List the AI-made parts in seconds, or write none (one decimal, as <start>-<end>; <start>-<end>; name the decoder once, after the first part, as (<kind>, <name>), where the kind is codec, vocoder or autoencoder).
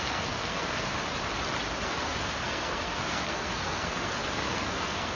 0.0-0.9 (codec, SNAC); 1.8-5.2